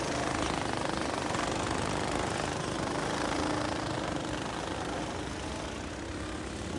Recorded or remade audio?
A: recorded